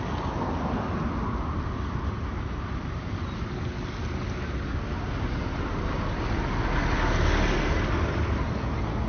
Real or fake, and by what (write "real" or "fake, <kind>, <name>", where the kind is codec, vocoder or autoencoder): real